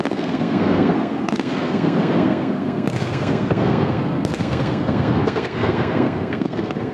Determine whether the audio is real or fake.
fake